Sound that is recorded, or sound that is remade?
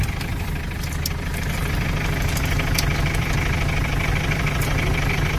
remade